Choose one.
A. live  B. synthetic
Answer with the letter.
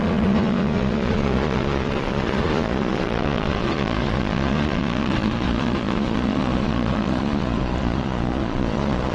B